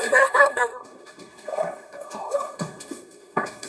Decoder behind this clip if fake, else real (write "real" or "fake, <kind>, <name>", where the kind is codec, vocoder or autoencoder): fake, codec, SNAC